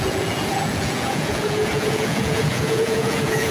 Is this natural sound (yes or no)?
no